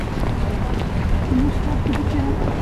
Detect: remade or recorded recorded